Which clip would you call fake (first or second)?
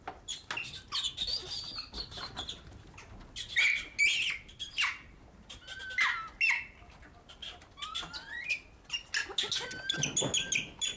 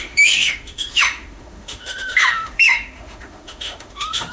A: second